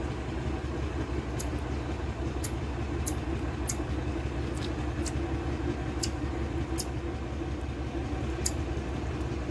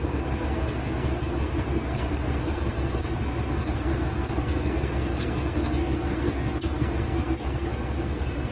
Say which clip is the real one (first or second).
first